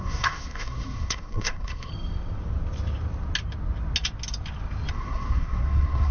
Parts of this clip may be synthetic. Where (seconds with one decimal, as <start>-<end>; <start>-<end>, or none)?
0.0-1.9; 4.9-6.1